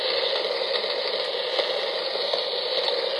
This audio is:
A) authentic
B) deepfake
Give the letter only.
A